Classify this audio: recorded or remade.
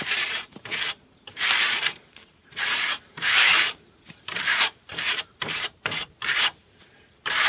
remade